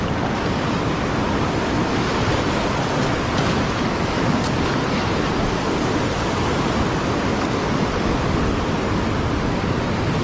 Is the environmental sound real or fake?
real